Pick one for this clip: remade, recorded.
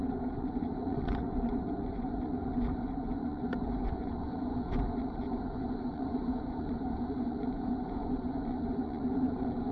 remade